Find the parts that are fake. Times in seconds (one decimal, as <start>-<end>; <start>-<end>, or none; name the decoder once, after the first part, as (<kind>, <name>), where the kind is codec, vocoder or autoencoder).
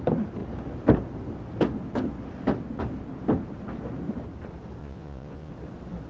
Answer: 4.8-5.5 (vocoder, Vocos)